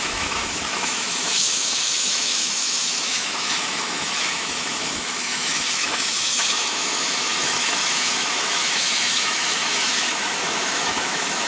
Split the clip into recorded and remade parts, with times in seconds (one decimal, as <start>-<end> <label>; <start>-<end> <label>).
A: 0.0-11.5 remade